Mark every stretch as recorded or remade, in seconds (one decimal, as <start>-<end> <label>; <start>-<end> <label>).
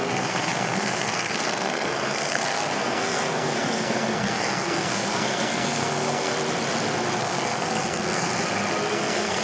0.0-6.3 remade; 6.3-7.2 recorded; 7.2-8.3 remade; 8.3-8.9 recorded; 8.9-9.4 remade